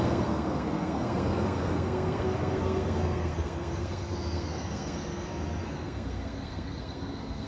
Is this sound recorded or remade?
remade